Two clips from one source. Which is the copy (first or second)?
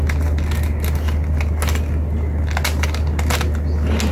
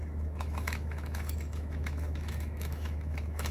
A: second